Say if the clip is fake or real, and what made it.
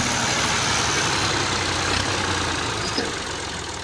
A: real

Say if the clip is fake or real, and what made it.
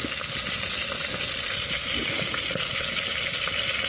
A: real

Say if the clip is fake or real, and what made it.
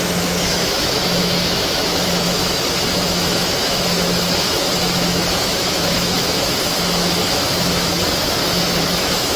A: fake, autoencoder, DAC-VAE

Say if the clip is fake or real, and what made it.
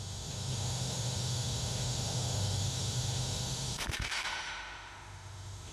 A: fake, autoencoder, DAC-VAE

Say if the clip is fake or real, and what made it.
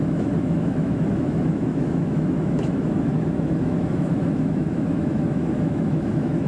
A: fake, autoencoder, DAC-VAE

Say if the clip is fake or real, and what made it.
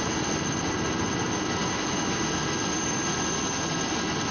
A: real